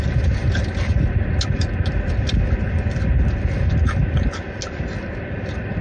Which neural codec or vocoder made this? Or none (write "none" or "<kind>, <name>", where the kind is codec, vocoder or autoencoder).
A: none